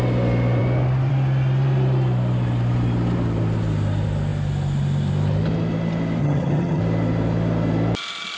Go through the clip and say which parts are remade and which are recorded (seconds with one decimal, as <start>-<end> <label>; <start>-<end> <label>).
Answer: 0.0-6.2 recorded; 6.2-6.8 remade; 6.8-8.4 recorded